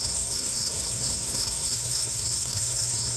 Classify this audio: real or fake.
fake